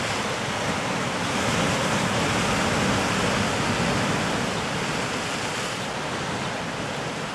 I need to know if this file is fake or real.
real